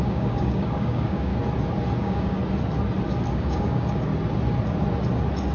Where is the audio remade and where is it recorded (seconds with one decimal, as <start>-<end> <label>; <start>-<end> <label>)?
0.0-1.3 remade; 1.3-2.0 recorded; 2.0-2.4 remade; 2.4-3.3 recorded; 3.3-4.1 remade; 4.1-5.5 recorded